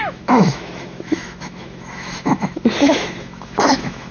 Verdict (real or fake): fake